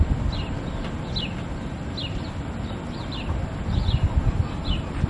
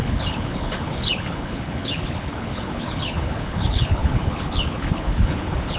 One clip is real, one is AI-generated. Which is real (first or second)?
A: first